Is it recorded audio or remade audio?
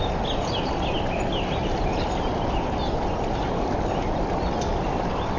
recorded